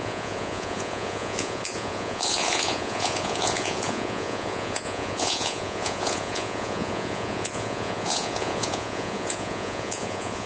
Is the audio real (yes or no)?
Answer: no